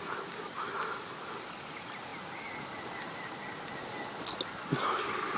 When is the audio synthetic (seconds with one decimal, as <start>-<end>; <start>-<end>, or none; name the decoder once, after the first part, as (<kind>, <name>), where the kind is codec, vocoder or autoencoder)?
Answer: none